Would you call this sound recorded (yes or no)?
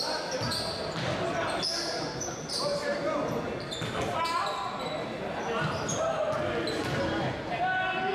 yes